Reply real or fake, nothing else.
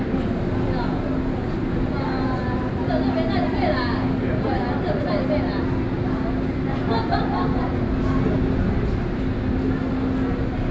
real